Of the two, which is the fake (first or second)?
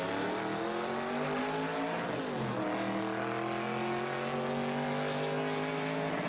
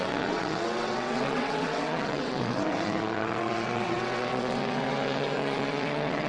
second